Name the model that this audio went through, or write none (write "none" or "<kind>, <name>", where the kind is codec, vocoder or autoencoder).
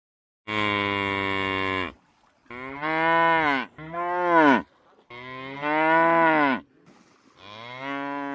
none